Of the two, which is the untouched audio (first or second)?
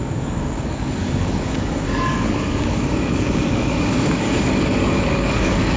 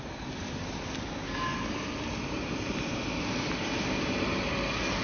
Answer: second